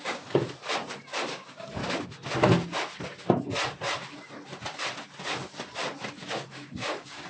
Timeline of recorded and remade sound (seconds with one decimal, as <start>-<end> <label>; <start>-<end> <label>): 0.0-0.4 remade; 0.4-1.3 recorded; 1.3-1.8 remade; 1.8-6.2 recorded; 6.2-7.3 remade